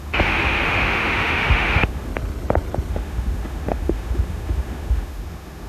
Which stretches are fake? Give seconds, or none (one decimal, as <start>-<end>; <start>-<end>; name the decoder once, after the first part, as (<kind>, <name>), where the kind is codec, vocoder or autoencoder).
0.0-2.1 (autoencoder, DAC-VAE); 2.9-5.7